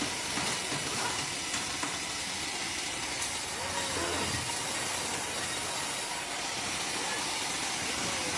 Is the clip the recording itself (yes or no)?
yes